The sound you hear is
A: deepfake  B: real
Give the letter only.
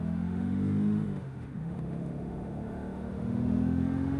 A